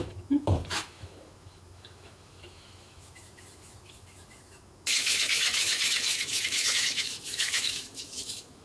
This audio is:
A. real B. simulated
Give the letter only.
B